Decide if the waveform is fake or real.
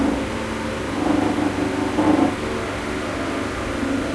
real